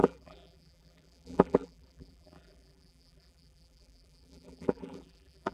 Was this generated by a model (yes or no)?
yes